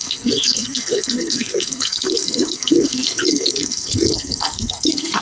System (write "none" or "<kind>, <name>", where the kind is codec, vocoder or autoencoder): codec, SNAC